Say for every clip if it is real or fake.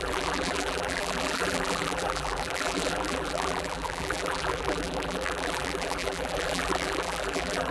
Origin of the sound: fake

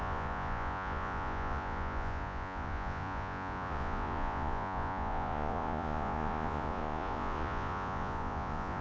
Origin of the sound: fake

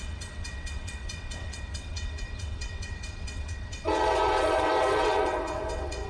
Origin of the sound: fake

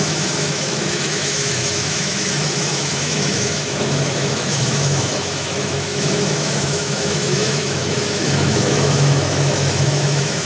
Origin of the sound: fake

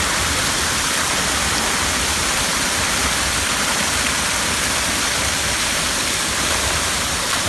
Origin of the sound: real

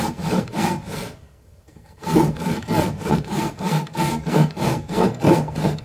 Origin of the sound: fake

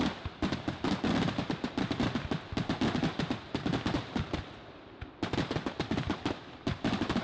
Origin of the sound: real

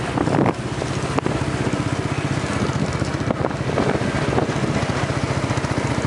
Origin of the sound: real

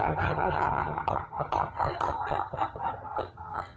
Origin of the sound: fake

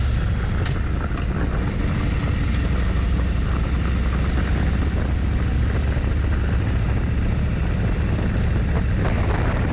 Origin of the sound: real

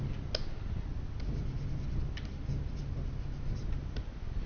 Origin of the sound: real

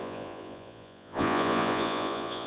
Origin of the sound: fake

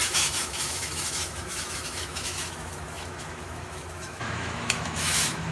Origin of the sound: fake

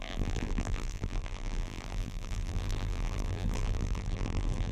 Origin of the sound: fake